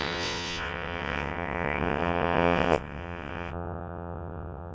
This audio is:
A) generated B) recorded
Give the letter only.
A